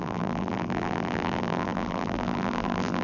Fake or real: fake